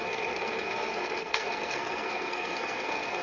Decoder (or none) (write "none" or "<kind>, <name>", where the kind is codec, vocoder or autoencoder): codec, SNAC